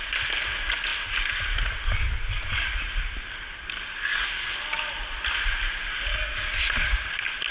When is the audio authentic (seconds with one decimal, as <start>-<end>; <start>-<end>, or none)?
0.0-7.5

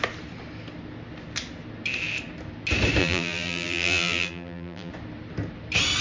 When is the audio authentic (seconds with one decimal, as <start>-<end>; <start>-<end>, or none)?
0.0-3.0; 4.9-6.0

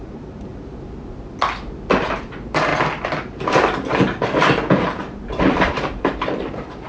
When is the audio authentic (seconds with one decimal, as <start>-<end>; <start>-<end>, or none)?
0.5-2.0; 2.7-4.8

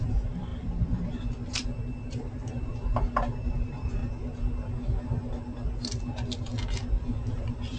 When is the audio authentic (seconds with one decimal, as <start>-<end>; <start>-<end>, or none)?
1.6-2.1; 4.0-7.3

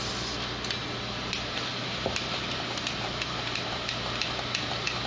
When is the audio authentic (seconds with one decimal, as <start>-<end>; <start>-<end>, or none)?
0.0-0.8; 3.9-5.1

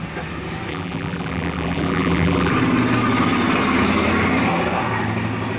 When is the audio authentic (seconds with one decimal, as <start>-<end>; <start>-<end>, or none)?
0.0-0.7; 2.5-5.6